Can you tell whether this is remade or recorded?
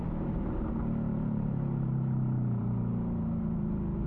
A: remade